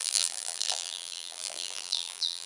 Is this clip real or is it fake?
fake